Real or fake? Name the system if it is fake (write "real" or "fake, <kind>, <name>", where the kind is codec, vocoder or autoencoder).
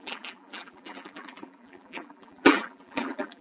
fake, vocoder, BigVGAN v2